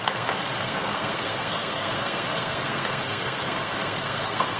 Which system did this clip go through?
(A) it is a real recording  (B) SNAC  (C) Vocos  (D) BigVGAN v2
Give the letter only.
B